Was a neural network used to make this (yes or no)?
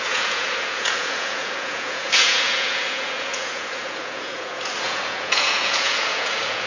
yes